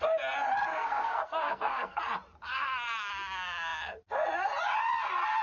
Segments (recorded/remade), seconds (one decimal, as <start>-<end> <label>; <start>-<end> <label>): 0.0-0.7 recorded; 0.7-2.0 remade; 2.0-2.5 recorded; 2.5-3.1 remade; 3.1-5.4 recorded